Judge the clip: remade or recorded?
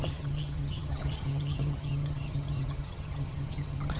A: remade